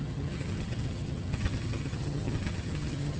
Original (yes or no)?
no